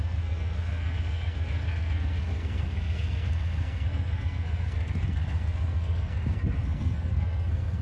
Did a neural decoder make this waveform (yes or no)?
yes